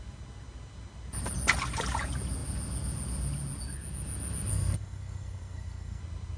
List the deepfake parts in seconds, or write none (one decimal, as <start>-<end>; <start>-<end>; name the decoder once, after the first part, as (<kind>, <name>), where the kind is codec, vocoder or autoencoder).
4.5-6.0 (codec, SNAC)